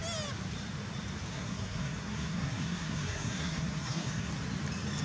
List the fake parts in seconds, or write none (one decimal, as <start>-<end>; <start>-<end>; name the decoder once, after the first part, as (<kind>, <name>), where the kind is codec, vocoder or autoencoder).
1.3-4.3 (codec, SNAC)